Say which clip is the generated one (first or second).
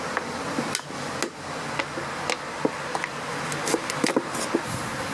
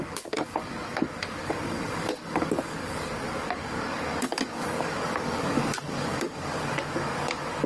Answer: second